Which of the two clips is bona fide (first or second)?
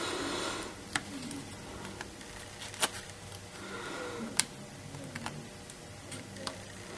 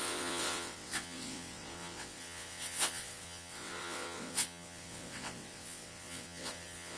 first